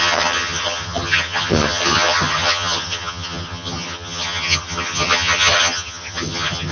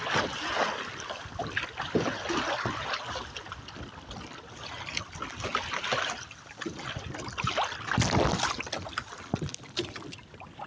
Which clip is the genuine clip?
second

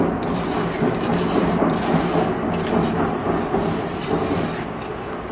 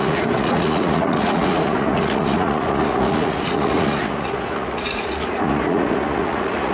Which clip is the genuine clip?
first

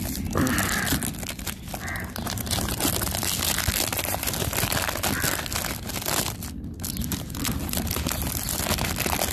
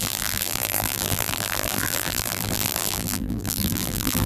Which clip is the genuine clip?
first